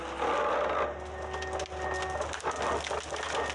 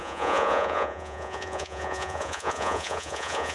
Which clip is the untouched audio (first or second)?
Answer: first